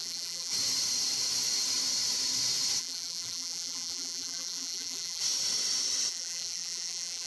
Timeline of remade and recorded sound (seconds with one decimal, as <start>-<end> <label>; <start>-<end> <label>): 0.0-0.5 remade; 0.5-2.8 recorded; 2.8-5.2 remade; 5.2-6.1 recorded; 6.1-7.3 remade